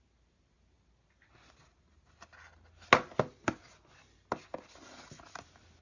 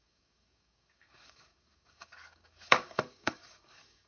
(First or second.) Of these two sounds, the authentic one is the first